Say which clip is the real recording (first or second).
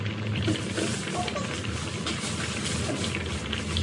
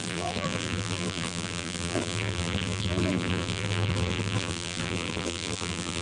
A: first